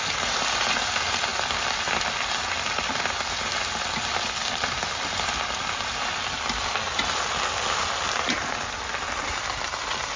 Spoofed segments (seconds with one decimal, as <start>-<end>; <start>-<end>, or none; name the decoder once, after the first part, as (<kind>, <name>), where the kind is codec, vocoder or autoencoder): none